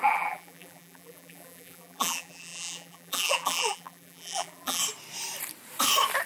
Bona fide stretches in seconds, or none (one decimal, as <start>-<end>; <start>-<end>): 4.8-6.3